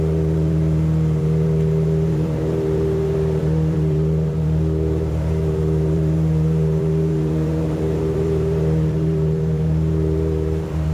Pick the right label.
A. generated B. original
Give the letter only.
A